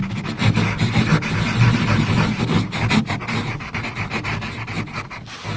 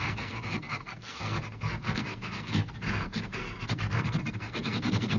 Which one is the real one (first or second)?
first